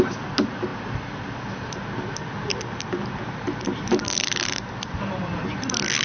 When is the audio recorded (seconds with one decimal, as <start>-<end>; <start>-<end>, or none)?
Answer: 0.0-6.0